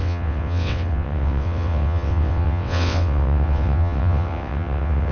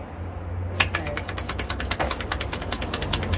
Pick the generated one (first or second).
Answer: first